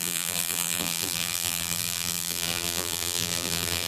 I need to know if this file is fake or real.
fake